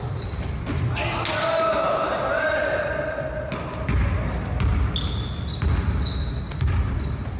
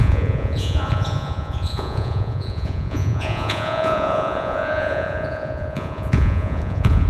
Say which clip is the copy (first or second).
second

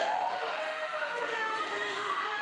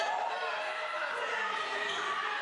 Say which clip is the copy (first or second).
first